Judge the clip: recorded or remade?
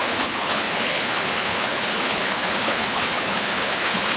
remade